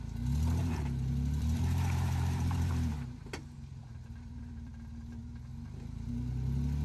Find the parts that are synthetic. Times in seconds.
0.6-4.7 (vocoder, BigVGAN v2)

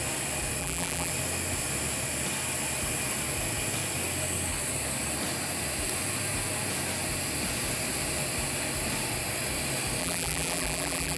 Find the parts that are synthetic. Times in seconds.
0.6-1.1 (vocoder, BigVGAN v2); 10.0-11.2

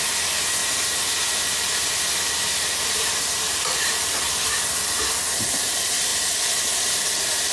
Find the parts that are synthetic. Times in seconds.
0.6-5.1 (vocoder, BigVGAN v2); 6.1-7.5